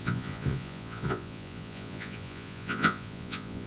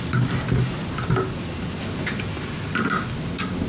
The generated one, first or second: first